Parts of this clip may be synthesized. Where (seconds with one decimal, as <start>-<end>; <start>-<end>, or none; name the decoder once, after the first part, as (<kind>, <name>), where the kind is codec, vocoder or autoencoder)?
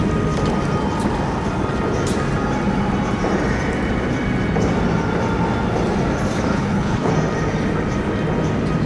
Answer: 6.5-7.1 (codec, HILCodec)